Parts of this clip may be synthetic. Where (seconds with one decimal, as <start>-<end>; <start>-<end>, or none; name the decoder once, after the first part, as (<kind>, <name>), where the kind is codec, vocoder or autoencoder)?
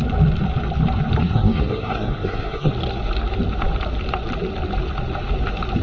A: 1.2-2.7 (codec, SNAC)